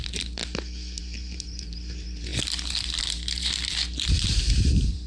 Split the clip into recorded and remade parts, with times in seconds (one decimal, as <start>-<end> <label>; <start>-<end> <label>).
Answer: 0.0-0.4 remade; 0.4-1.0 recorded; 1.0-2.3 remade; 2.3-3.0 recorded; 3.0-5.1 remade